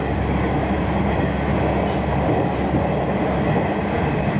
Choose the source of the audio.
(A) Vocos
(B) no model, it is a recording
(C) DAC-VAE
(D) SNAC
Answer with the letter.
B